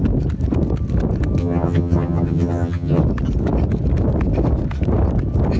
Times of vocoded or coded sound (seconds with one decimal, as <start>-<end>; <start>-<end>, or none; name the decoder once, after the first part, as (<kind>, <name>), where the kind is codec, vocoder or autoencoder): 1.4-3.0 (vocoder, HiFi-GAN)

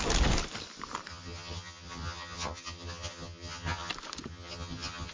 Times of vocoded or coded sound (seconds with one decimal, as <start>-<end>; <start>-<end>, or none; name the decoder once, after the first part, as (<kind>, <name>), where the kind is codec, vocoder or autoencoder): 1.1-3.9 (vocoder, HiFi-GAN); 4.3-5.1

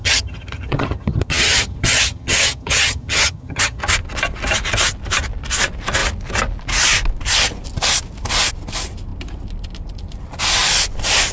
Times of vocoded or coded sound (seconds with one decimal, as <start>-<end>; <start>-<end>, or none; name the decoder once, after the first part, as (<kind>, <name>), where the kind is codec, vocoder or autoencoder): 0.0-3.8 (vocoder, HiFi-GAN)

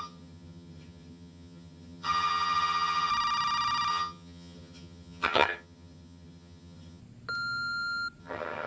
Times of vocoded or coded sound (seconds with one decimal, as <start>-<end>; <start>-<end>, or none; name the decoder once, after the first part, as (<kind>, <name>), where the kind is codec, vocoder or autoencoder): 0.0-3.1 (vocoder, HiFi-GAN); 3.9-7.0; 8.2-8.7